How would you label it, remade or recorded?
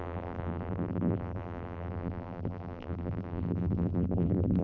remade